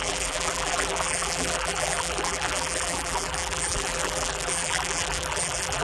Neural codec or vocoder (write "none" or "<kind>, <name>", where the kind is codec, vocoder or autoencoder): vocoder, BigVGAN v2